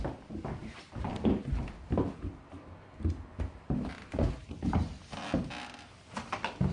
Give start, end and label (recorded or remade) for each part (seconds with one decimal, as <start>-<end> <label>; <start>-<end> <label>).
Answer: 0.0-6.7 recorded